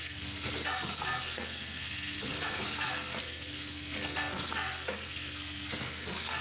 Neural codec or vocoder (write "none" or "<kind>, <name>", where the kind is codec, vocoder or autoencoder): codec, SNAC